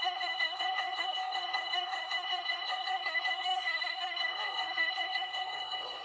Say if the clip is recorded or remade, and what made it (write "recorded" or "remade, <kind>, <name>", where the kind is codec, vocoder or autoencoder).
remade, codec, SNAC